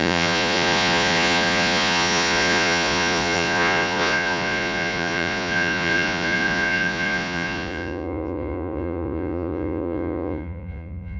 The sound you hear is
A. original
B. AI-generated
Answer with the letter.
B